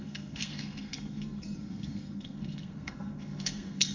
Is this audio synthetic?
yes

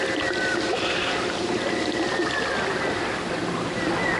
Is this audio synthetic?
no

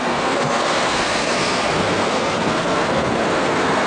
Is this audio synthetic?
yes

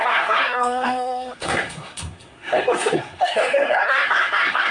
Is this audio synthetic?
yes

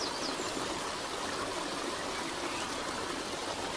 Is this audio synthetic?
no